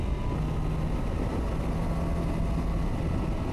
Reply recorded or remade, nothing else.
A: recorded